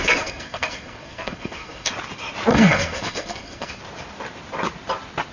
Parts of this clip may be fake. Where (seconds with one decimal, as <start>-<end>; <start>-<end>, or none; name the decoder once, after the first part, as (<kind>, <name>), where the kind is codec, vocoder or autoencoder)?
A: 0.0-1.9 (codec, SNAC); 2.5-3.8